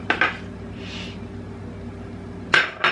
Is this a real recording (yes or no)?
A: yes